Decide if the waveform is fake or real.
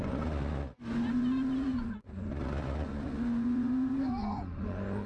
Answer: fake